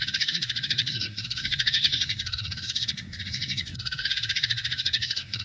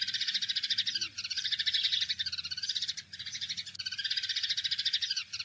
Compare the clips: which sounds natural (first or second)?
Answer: second